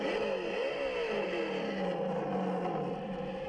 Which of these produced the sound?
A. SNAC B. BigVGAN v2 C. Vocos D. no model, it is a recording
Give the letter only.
D